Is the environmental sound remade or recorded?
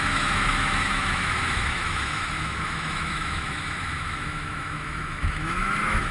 remade